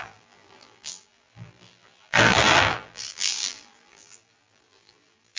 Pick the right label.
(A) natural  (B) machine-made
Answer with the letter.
B